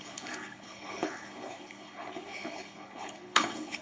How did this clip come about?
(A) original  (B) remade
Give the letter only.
B